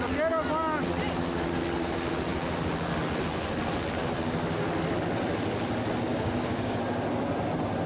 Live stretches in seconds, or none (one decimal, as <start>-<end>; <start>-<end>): 0.0-6.1; 6.8-7.9